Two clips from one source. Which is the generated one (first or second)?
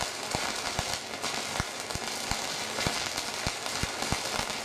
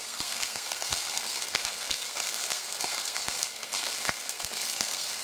second